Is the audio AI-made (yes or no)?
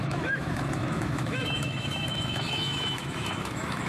yes